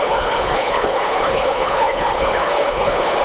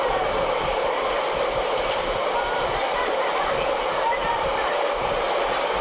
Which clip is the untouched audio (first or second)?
second